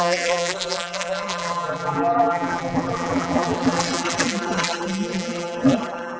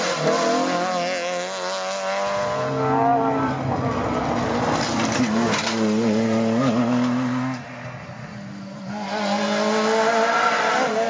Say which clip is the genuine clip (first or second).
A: second